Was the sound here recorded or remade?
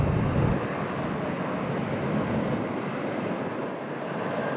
recorded